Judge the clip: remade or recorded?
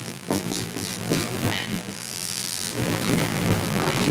remade